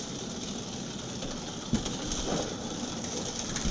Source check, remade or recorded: recorded